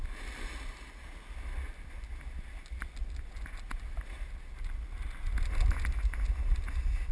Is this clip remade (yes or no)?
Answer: no